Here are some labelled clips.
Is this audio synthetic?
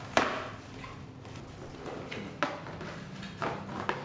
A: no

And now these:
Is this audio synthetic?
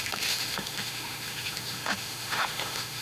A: yes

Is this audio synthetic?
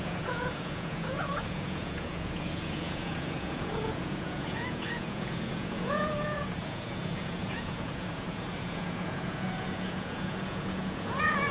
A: yes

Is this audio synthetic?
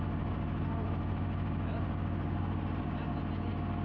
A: no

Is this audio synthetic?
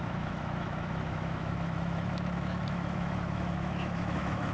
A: yes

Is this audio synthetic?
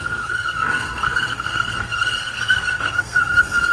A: yes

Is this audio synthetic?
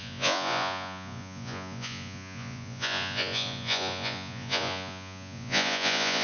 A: yes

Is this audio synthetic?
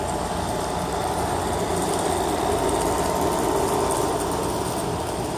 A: yes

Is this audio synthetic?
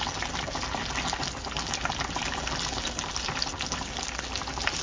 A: no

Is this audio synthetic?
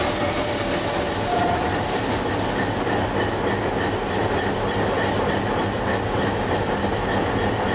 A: no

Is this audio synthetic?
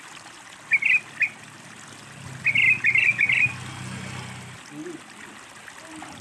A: no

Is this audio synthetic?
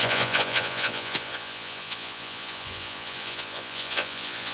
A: yes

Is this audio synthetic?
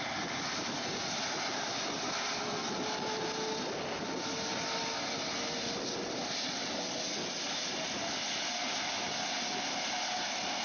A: no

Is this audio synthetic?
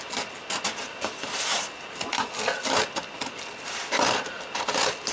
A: no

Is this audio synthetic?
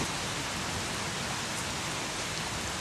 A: no